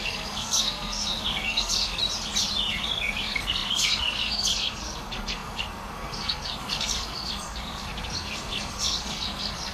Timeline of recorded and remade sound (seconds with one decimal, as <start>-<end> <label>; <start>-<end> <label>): 0.0-2.0 remade; 2.0-2.7 recorded; 2.7-9.7 remade